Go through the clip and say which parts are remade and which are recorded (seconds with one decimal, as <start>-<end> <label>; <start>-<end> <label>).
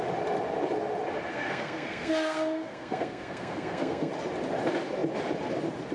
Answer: 0.0-1.3 recorded; 1.3-4.1 remade; 4.1-5.9 recorded